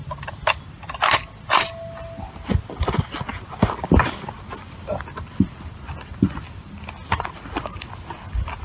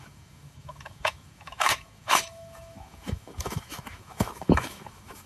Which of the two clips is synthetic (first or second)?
second